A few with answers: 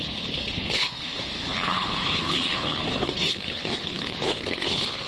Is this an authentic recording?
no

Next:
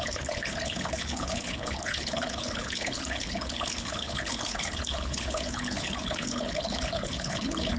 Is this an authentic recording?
no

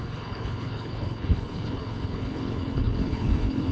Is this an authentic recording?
no